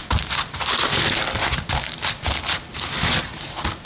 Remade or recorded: recorded